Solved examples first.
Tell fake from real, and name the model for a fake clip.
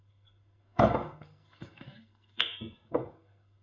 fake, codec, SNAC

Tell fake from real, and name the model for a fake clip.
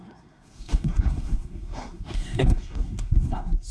fake, codec, SNAC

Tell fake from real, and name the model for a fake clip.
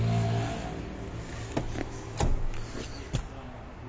real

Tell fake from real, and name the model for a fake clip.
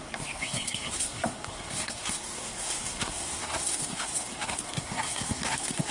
fake, codec, SNAC